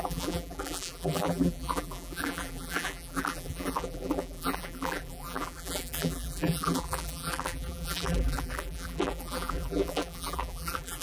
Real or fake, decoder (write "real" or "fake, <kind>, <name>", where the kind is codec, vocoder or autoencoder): fake, vocoder, BigVGAN v2